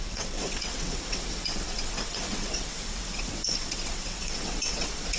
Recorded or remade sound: remade